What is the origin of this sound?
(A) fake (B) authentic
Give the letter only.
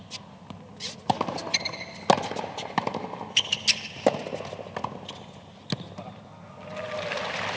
B